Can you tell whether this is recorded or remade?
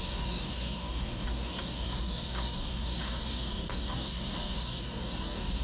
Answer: remade